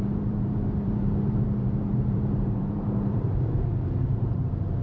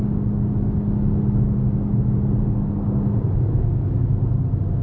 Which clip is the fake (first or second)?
first